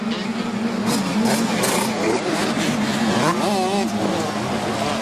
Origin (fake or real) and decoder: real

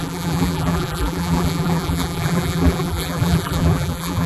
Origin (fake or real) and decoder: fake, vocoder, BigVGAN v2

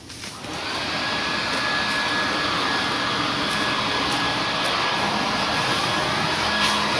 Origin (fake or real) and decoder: real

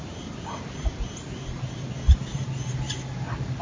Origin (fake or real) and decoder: fake, vocoder, BigVGAN v2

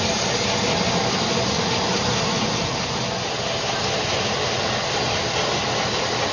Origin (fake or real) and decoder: real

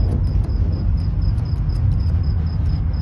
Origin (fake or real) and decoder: real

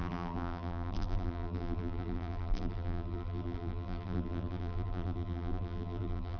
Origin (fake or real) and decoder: fake, vocoder, BigVGAN v2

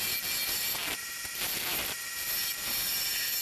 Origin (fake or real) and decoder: fake, vocoder, BigVGAN v2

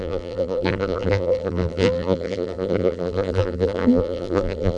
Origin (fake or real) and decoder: fake, vocoder, BigVGAN v2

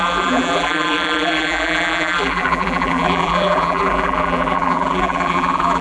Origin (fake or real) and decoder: fake, vocoder, BigVGAN v2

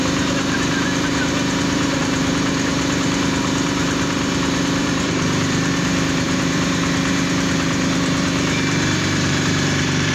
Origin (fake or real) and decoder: fake, vocoder, BigVGAN v2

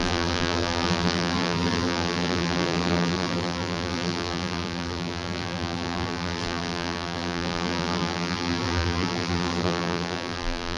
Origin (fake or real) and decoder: fake, vocoder, BigVGAN v2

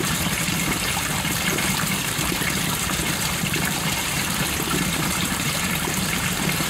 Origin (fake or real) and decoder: fake, vocoder, BigVGAN v2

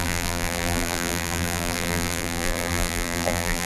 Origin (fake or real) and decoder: fake, vocoder, BigVGAN v2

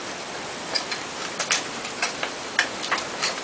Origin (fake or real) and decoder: fake, vocoder, BigVGAN v2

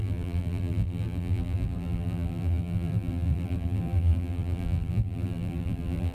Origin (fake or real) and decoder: fake, vocoder, BigVGAN v2